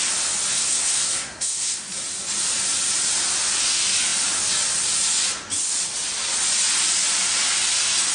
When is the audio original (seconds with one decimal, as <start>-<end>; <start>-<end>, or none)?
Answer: 0.0-0.5; 1.9-8.1